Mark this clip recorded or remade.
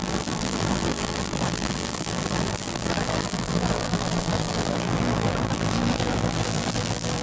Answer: remade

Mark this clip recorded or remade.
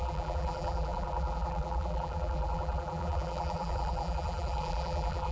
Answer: remade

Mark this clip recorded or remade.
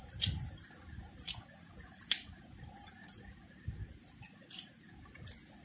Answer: recorded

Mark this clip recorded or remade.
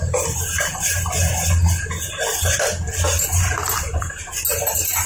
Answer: recorded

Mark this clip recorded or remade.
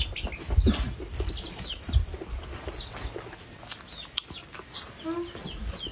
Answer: recorded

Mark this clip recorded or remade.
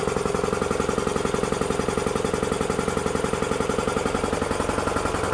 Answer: recorded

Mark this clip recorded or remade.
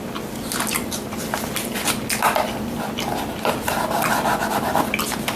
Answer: recorded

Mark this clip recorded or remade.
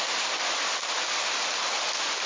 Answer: recorded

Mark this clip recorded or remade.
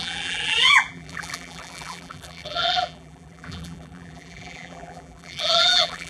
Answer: remade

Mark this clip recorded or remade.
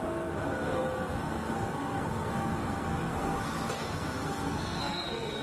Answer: remade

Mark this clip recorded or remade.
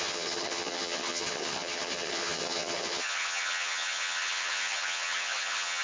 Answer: remade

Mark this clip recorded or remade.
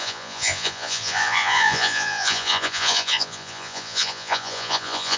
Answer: remade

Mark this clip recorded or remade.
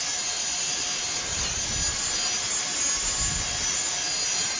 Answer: recorded